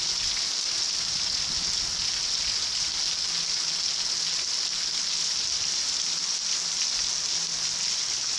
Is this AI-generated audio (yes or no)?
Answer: no